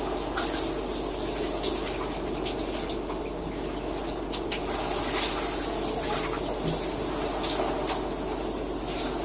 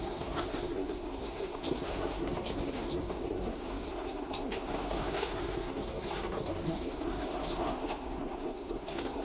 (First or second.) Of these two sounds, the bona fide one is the first